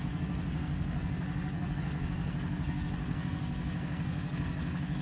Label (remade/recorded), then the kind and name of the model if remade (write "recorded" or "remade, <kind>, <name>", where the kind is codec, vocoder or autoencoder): remade, codec, SNAC